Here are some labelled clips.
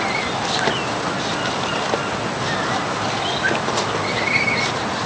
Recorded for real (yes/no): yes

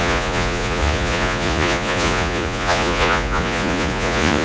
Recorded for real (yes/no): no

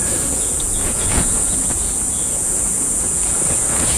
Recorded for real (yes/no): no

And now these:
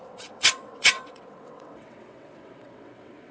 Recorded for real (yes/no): no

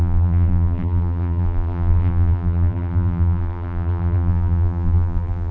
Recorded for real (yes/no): no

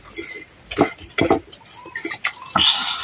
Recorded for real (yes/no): yes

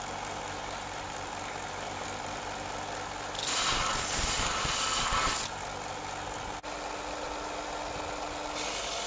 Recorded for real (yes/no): yes